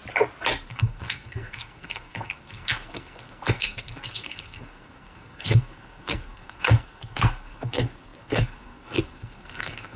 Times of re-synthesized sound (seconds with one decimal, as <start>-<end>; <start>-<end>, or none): 0.7-10.0